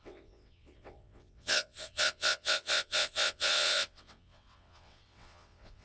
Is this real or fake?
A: fake